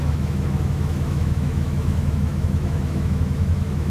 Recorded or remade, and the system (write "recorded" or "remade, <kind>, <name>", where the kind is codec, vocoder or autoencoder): remade, autoencoder, DAC-VAE